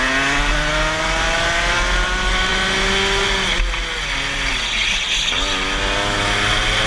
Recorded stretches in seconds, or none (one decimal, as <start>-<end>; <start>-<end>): 0.0-6.9